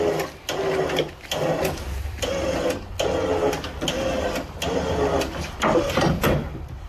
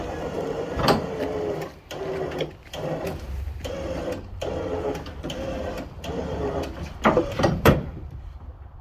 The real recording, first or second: first